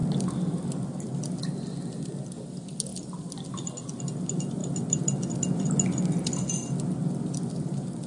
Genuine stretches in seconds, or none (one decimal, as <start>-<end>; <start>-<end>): 0.0-8.1